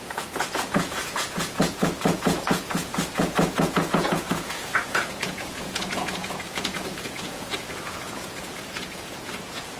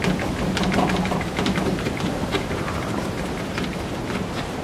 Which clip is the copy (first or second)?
first